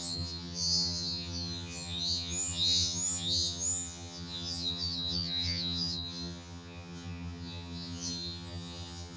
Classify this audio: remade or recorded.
remade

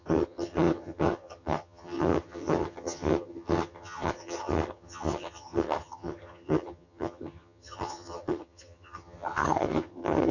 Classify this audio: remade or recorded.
remade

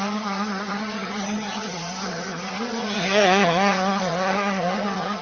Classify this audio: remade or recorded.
remade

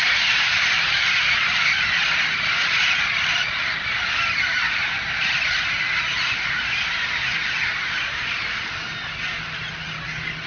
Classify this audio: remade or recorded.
recorded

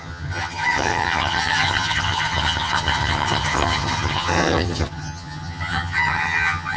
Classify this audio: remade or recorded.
remade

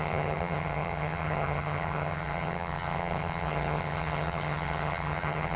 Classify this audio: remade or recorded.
remade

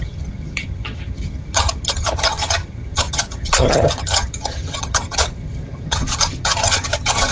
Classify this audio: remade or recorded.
remade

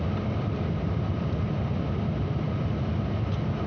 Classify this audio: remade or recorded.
recorded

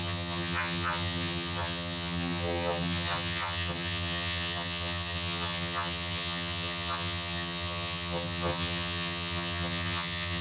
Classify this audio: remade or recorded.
remade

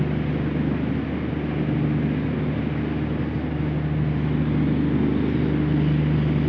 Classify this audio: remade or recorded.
recorded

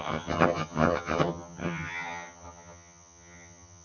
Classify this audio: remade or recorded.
remade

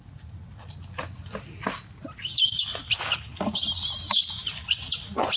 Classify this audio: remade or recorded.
recorded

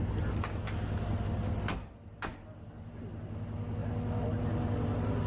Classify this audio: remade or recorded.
recorded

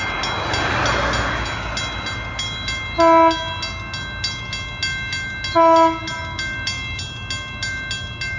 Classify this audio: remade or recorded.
recorded